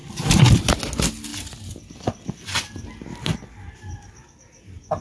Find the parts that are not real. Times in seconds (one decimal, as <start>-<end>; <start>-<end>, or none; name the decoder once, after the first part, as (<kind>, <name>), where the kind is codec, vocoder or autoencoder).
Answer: 0.0-0.6 (vocoder, BigVGAN v2)